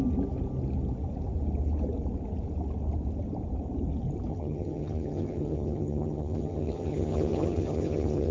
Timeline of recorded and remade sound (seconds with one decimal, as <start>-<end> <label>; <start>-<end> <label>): 0.0-4.3 recorded; 4.3-8.3 remade